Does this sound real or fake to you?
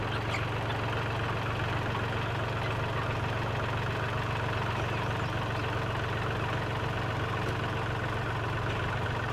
real